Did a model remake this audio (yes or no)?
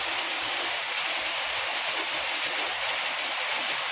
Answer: no